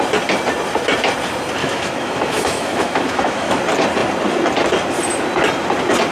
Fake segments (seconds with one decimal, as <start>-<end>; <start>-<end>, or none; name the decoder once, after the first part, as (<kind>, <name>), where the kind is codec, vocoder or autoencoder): 1.6-3.6 (autoencoder, DAC-VAE)